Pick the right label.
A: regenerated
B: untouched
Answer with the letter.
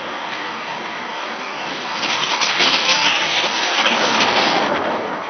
A